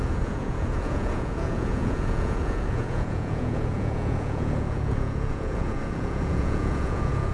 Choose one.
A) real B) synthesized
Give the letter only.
B